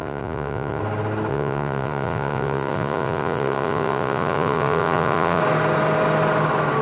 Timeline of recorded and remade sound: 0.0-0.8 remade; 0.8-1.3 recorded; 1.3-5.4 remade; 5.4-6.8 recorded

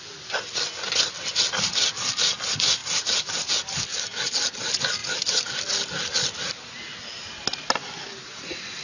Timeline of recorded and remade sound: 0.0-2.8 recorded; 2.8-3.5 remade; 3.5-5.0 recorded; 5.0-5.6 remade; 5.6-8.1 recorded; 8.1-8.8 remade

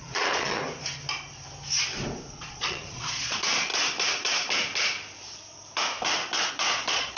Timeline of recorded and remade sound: 0.0-0.6 remade; 0.6-2.3 recorded; 2.3-3.7 remade; 3.7-6.5 recorded; 6.5-7.2 remade

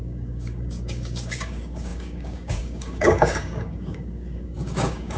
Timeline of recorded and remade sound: 0.0-5.2 remade

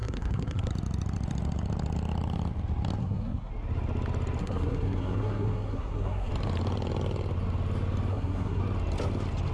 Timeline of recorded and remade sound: 0.0-0.7 remade; 0.7-3.0 recorded; 3.0-3.5 remade; 3.5-4.4 recorded; 4.4-6.3 remade; 6.3-8.1 recorded; 8.1-8.6 remade; 8.6-9.5 recorded

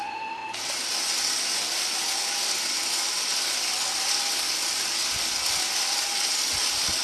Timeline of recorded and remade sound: 0.0-7.0 recorded

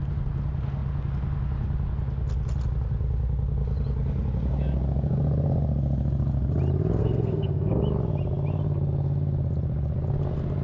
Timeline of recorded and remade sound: 0.0-7.0 recorded; 7.0-7.8 remade; 7.8-10.6 recorded

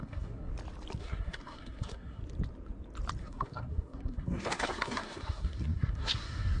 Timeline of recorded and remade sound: 0.0-0.5 remade; 0.5-1.0 recorded; 1.0-2.2 remade; 2.2-3.2 recorded; 3.2-6.6 remade